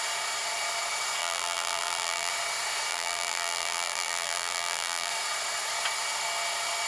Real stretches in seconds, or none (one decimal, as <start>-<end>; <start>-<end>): 0.0-1.2; 2.3-2.9; 5.1-6.9